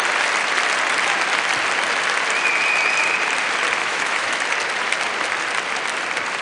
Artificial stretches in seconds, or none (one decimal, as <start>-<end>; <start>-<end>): 3.8-4.4